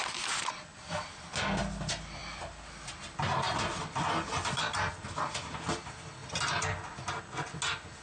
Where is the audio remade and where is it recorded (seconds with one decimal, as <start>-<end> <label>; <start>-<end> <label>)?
0.0-8.0 recorded